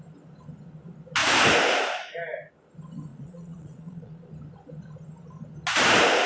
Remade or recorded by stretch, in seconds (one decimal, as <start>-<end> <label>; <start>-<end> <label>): 0.0-3.1 recorded; 3.1-4.3 remade; 4.3-6.3 recorded